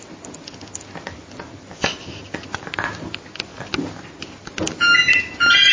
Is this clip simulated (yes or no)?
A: no